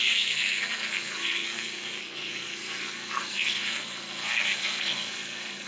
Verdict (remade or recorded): remade